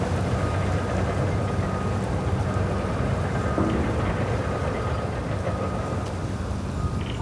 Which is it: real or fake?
real